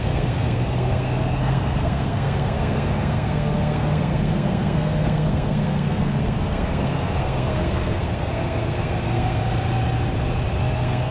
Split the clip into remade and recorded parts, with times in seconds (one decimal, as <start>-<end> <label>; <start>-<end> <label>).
0.0-9.4 remade; 9.4-10.6 recorded; 10.6-11.1 remade